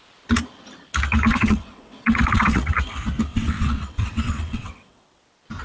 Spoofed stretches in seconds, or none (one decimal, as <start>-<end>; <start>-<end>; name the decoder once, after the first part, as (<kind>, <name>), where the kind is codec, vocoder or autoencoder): 1.3-2.7 (vocoder, WaveNeXt); 3.3-5.0